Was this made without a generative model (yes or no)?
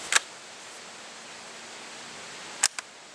yes